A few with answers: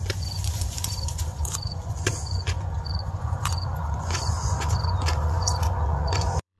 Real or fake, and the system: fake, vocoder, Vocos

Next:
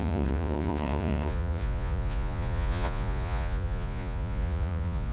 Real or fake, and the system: fake, vocoder, Vocos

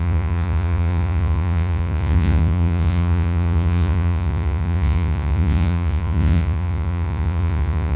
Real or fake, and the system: fake, vocoder, Vocos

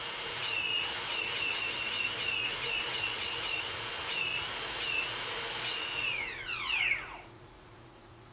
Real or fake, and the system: fake, vocoder, Vocos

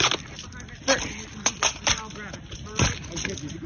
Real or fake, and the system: real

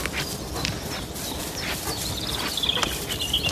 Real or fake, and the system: real